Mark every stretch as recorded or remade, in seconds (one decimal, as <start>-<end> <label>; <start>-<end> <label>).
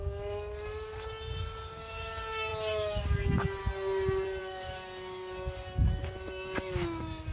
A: 0.0-3.6 remade; 3.6-4.4 recorded; 4.4-7.3 remade